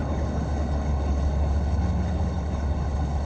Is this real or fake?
fake